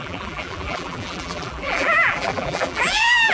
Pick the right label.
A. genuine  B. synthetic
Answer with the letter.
B